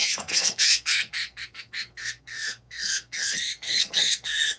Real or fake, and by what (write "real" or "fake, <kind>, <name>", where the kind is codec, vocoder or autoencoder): fake, codec, SNAC